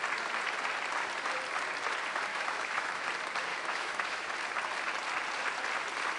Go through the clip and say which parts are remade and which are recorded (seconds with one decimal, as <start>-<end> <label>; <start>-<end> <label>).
0.0-2.3 recorded; 2.3-3.1 remade; 3.1-3.5 recorded; 3.5-4.3 remade; 4.3-6.2 recorded